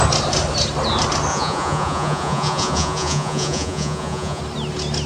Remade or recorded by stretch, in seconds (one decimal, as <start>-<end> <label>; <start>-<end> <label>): 0.0-1.3 recorded; 1.3-4.4 remade; 4.4-5.1 recorded